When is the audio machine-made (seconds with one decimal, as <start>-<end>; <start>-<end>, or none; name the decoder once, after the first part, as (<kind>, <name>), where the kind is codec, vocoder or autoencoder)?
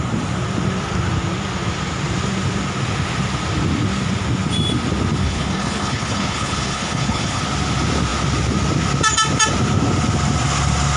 5.2-7.4 (codec, HILCodec)